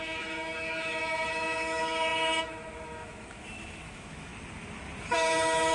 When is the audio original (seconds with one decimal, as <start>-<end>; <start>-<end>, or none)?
4.3-5.0